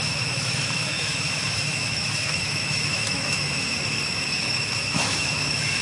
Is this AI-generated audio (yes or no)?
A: yes